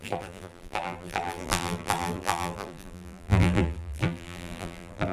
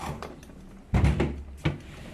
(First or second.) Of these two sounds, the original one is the second